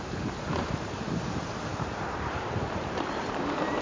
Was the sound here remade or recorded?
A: remade